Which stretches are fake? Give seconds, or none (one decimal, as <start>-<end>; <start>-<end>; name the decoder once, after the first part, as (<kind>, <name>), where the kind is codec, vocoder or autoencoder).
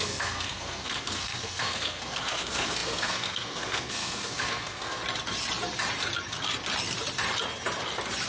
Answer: 0.0-5.0 (codec, SNAC)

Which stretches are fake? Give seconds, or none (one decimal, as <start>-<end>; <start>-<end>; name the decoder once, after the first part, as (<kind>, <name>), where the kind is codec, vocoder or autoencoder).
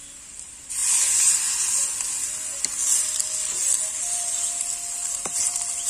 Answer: 5.0-5.5 (vocoder, BigVGAN v2)